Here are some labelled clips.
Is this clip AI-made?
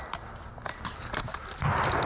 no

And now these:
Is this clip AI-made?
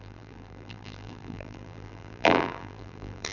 yes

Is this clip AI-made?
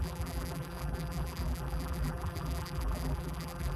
yes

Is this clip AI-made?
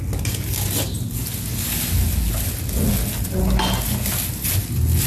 no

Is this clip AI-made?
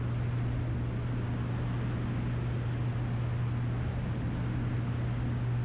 no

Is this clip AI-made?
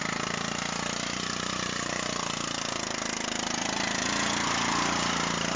yes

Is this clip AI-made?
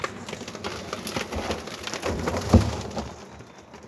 no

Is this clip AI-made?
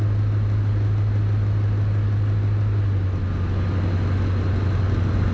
no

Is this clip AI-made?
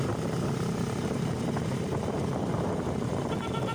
yes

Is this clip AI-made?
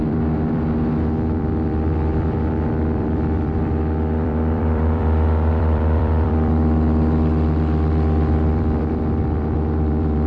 yes